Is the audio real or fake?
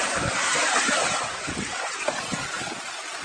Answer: real